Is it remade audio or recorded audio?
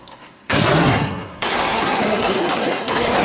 remade